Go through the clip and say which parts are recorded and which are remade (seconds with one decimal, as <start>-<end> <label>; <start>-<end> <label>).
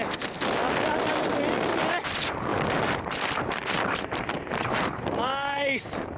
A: 0.0-1.1 recorded; 1.1-2.0 remade; 2.0-2.5 recorded; 2.5-6.2 remade